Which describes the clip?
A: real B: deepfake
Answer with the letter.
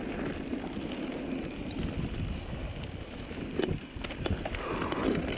A